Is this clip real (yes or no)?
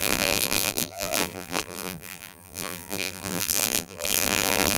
no